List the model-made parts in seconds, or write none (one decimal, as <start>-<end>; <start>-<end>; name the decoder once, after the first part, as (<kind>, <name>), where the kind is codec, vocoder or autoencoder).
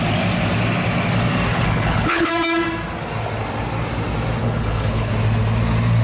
1.5-2.3 (codec, HILCodec); 4.4-5.1